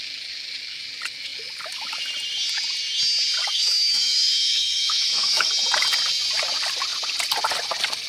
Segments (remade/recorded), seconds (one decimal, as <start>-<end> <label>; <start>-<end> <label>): 0.0-3.4 recorded; 3.4-5.5 remade; 5.5-8.1 recorded